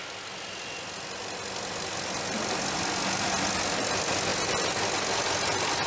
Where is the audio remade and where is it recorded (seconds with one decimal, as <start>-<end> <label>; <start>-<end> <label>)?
0.0-5.9 recorded